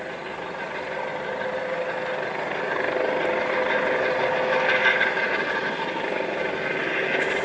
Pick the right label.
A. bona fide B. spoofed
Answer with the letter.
A